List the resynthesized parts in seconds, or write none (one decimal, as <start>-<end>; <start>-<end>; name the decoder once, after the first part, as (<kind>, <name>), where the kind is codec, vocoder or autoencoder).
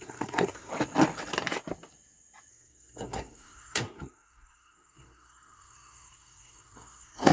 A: 0.0-0.7 (codec, SNAC); 2.5-7.3